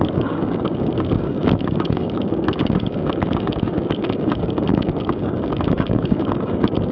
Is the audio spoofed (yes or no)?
yes